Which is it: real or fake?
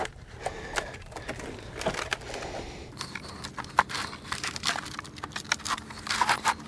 real